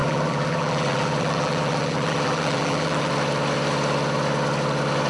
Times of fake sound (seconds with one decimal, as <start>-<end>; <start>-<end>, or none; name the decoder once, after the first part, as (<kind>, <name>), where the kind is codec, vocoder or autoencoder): 0.0-3.1 (vocoder, BigVGAN v2)